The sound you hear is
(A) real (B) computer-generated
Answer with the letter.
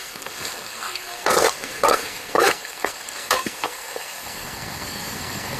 B